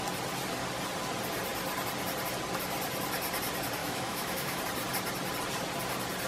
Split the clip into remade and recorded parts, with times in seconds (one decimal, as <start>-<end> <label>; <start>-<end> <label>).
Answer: 0.0-3.8 recorded; 3.8-4.6 remade; 4.6-6.3 recorded

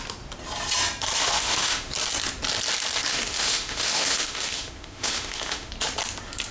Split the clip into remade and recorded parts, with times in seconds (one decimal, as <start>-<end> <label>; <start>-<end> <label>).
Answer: 0.0-1.2 recorded; 1.2-1.9 remade; 1.9-3.1 recorded; 3.1-5.7 remade; 5.7-6.5 recorded